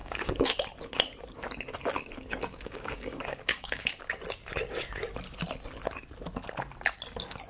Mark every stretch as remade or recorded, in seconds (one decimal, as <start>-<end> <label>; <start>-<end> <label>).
0.0-0.6 remade; 0.6-2.1 recorded; 2.1-4.1 remade; 4.1-7.5 recorded